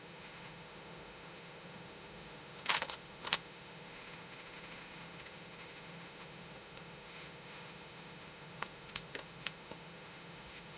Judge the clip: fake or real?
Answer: fake